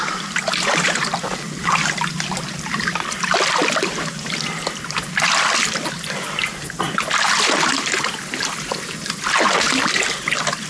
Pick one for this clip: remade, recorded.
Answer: recorded